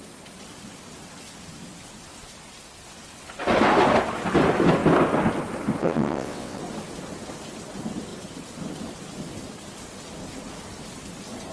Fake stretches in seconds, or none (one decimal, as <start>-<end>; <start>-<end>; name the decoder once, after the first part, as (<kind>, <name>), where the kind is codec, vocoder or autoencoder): 5.8-6.6 (vocoder, WaveNeXt)